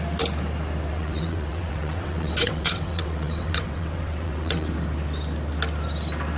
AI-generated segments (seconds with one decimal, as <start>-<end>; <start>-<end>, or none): 0.9-4.7